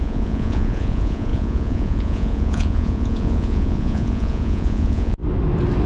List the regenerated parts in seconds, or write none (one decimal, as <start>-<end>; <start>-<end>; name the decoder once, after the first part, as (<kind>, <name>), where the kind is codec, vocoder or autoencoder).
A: 0.0-5.2 (vocoder, Vocos)